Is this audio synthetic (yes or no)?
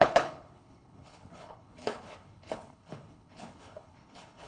yes